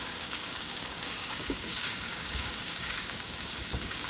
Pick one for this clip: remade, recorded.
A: remade